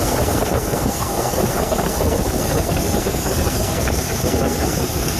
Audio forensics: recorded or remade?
remade